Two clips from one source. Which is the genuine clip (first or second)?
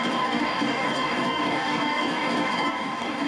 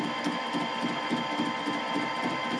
second